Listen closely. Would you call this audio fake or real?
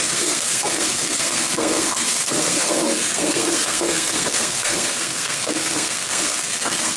fake